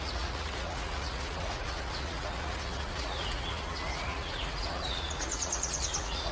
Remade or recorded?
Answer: remade